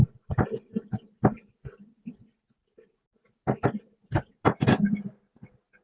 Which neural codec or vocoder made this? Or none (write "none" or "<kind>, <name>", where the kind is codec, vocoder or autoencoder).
none